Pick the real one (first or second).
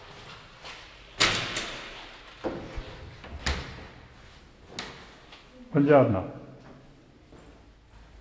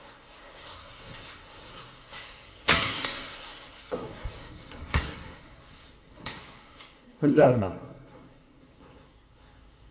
first